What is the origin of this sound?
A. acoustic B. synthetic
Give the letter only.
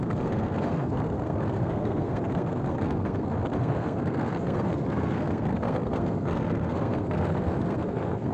B